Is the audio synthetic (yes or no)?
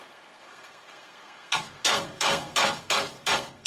yes